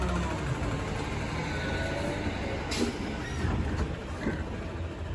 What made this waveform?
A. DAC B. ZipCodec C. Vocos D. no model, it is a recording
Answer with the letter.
D